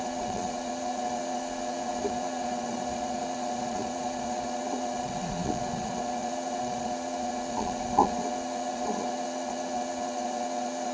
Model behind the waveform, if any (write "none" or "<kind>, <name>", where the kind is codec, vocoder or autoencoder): vocoder, Vocos